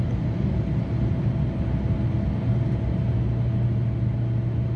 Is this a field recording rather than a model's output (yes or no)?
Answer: yes